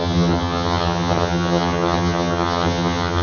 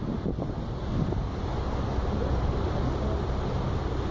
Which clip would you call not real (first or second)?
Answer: first